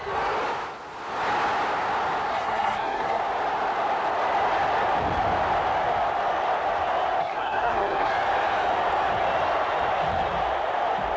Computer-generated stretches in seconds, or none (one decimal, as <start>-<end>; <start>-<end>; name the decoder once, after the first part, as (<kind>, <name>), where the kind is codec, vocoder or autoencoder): 2.3-3.2 (codec, SNAC); 7.2-8.1